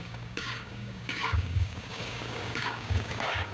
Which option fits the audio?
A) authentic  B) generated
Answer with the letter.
B